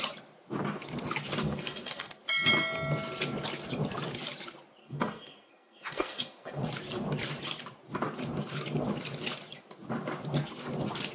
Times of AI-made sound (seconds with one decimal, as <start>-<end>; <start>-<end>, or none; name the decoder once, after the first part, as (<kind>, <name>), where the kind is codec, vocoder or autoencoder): 1.4-2.2 (codec, SNAC); 4.8-6.6